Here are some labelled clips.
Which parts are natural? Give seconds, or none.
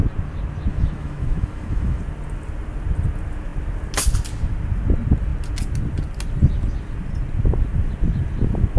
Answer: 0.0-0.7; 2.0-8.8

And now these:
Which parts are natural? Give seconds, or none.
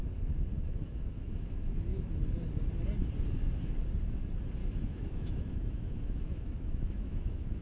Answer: 0.0-0.5; 2.1-4.6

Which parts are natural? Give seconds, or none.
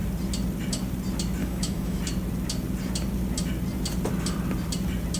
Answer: 0.0-1.4; 2.0-5.2